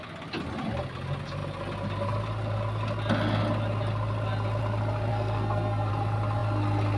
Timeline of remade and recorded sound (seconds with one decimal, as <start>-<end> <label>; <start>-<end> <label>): 0.0-5.1 recorded; 5.1-5.9 remade; 5.9-7.0 recorded